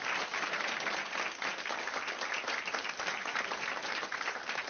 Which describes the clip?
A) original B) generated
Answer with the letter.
B